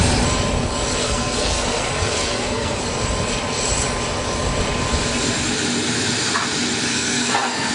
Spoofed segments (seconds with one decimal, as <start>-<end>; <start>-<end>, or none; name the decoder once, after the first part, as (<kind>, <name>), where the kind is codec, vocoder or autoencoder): 1.0-2.8 (codec, SNAC); 6.9-7.7